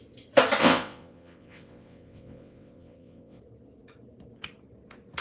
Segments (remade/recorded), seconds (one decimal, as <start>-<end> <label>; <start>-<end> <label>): 0.0-0.6 recorded; 0.6-3.4 remade; 3.4-5.2 recorded

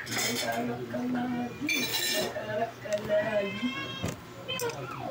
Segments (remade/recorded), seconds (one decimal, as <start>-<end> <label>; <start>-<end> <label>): 0.0-5.1 recorded